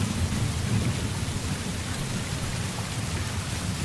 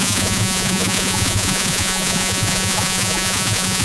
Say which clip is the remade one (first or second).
second